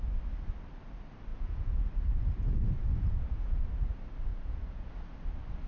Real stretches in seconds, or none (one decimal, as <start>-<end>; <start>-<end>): 0.0-1.3; 1.9-2.9; 3.6-4.3; 4.9-5.7